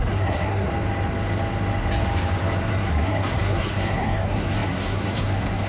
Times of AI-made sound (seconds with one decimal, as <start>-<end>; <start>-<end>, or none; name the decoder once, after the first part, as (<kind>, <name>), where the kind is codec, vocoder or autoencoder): 0.0-0.7 (codec, SNAC); 2.7-5.7